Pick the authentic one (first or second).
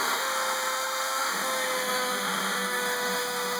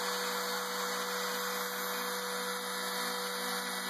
second